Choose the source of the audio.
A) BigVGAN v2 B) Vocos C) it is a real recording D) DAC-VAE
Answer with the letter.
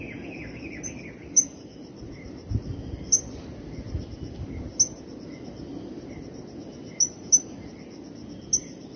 C